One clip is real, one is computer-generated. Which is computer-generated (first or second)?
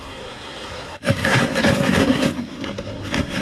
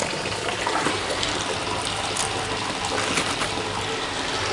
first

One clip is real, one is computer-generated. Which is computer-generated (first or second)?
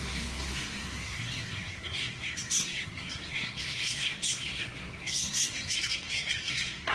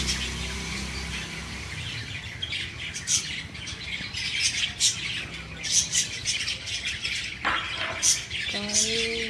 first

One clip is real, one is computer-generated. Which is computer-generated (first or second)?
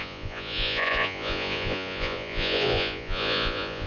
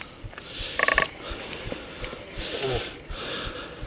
first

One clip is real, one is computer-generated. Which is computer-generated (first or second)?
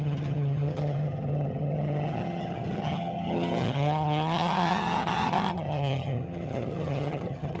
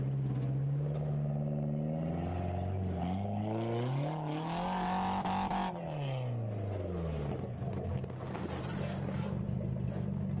first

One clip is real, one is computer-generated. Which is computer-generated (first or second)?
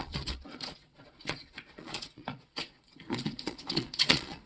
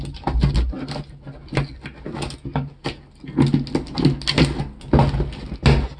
first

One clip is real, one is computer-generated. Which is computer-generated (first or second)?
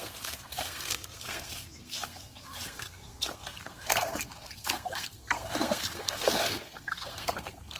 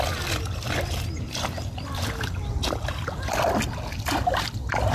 first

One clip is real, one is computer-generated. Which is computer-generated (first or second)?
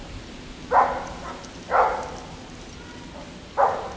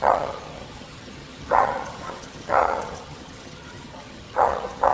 second